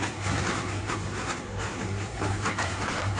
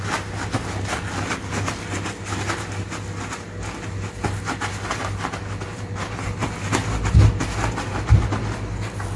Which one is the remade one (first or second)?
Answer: first